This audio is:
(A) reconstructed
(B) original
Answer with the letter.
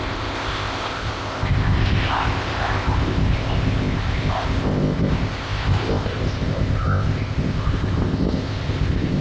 A